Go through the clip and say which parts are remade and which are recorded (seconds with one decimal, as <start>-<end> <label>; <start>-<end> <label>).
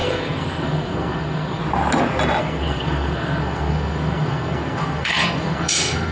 0.0-1.6 remade; 1.6-2.4 recorded; 2.4-6.1 remade